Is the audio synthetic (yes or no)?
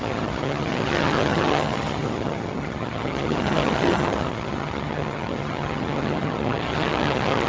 yes